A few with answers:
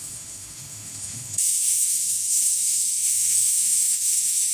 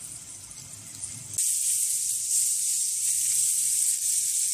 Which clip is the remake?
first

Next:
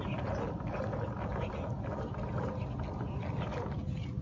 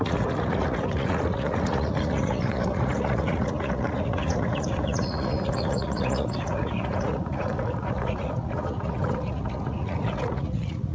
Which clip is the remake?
second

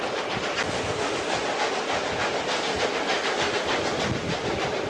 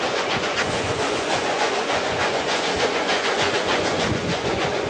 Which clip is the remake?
second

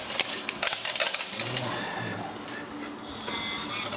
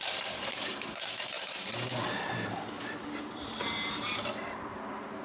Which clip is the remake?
second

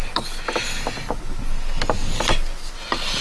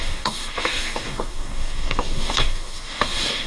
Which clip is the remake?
second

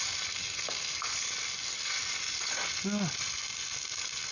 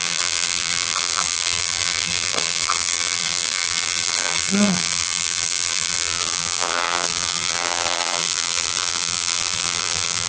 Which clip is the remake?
second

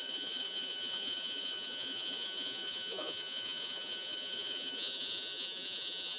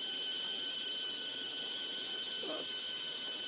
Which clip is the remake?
first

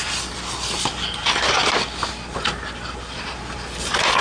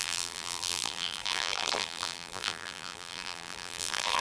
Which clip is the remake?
second